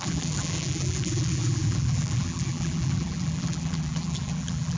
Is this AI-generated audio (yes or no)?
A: yes